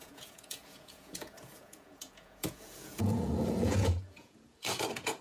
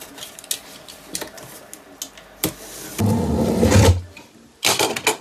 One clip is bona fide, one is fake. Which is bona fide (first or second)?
second